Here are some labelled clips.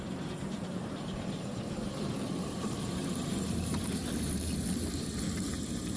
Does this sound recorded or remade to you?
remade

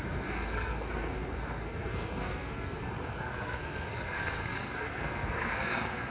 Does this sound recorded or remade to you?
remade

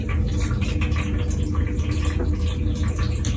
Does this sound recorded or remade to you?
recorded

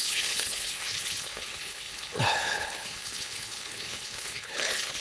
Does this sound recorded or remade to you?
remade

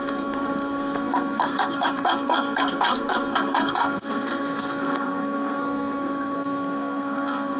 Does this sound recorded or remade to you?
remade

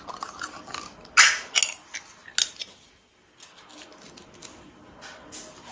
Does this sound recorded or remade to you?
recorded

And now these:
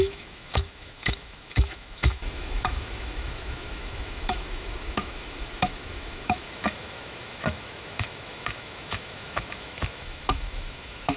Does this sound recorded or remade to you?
remade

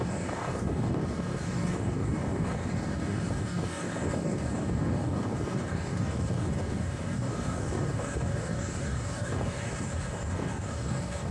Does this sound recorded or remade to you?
remade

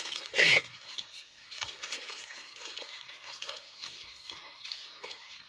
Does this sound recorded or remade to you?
remade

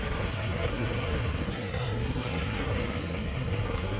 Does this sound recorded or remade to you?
remade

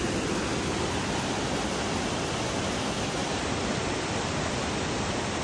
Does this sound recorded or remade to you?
recorded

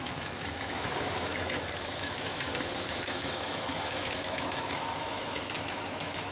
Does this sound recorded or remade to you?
remade